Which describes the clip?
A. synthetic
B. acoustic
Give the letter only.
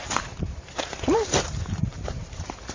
A